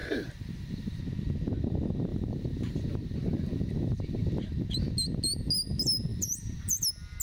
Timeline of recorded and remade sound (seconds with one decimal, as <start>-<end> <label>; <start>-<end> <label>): 0.0-1.0 remade; 1.0-2.1 recorded; 2.1-4.3 remade; 4.3-6.1 recorded; 6.1-6.8 remade; 6.8-7.2 recorded